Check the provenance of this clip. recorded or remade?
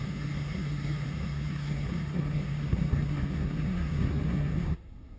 remade